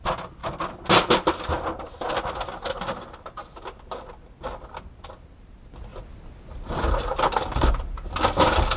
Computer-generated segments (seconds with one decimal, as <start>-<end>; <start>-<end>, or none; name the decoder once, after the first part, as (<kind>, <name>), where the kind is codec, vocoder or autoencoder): 0.0-0.4 (vocoder, BigVGAN v2); 5.0-8.8